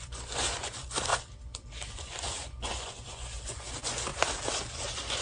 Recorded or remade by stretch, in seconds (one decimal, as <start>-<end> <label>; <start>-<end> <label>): 0.0-1.1 remade; 1.1-1.9 recorded; 1.9-4.1 remade; 4.1-4.7 recorded; 4.7-5.2 remade